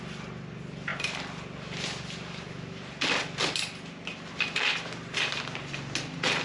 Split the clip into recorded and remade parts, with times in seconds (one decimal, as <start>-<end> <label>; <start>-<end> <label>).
0.0-6.4 recorded